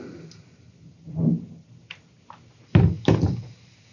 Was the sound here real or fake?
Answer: real